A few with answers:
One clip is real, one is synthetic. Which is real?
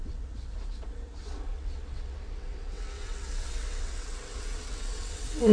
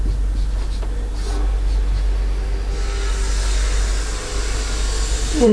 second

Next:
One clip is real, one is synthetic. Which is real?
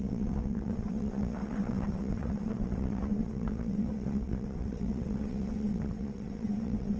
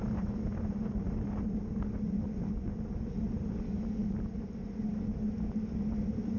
second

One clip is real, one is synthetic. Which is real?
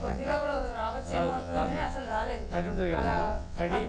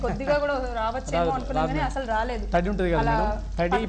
second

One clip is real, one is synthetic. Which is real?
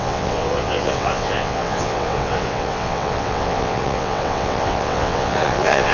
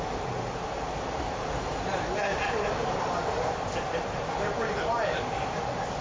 second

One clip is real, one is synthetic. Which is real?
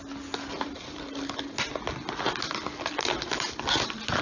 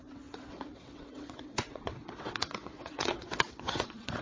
first